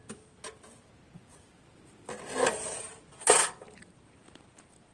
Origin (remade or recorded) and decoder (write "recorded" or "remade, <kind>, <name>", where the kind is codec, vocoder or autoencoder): recorded